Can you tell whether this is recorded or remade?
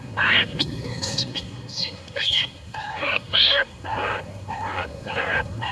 remade